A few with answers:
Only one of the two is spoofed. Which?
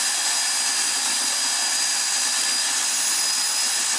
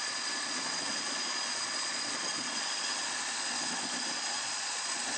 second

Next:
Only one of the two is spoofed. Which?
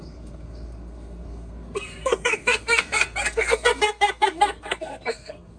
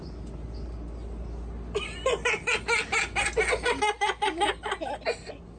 first